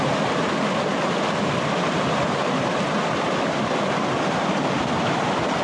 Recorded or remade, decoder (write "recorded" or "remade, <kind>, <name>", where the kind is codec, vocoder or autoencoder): recorded